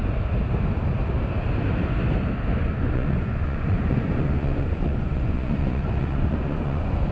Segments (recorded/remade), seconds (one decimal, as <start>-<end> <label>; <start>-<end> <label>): 0.0-2.6 recorded; 2.6-7.1 remade

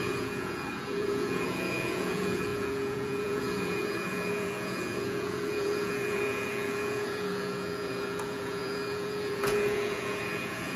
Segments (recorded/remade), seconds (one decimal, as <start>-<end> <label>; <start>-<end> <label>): 0.0-10.8 remade

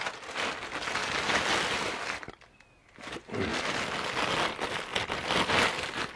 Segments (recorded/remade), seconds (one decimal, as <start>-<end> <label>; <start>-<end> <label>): 0.0-6.2 recorded

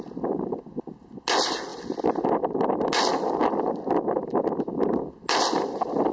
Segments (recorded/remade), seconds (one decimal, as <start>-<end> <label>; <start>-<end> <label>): 0.0-6.1 recorded

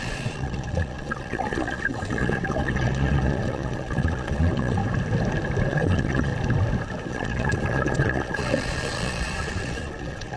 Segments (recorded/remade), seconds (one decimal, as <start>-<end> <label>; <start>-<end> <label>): 0.0-4.8 remade; 4.8-5.7 recorded; 5.7-6.3 remade; 6.3-7.1 recorded; 7.1-10.4 remade